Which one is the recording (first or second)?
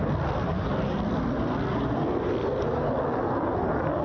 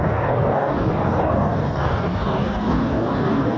first